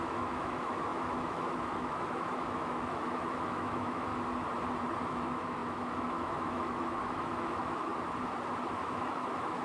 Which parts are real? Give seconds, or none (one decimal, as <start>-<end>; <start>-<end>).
4.1-5.0; 7.9-8.7

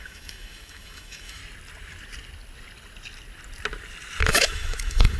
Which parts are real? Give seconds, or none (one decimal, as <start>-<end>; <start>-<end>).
1.4-4.3

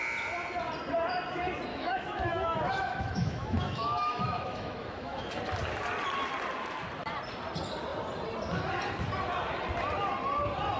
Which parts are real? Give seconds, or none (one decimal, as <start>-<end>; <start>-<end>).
0.0-1.7; 5.3-10.8

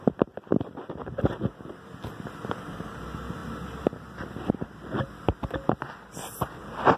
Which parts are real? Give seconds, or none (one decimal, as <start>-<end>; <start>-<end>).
0.0-7.0

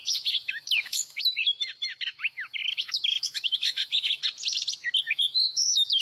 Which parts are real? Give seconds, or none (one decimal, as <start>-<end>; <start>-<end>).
1.4-2.2; 4.2-5.0

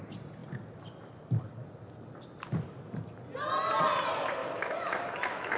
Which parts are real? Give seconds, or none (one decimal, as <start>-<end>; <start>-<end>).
0.0-4.4